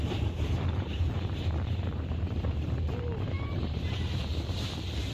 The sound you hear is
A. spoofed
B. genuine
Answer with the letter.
A